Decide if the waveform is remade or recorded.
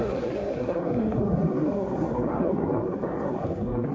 remade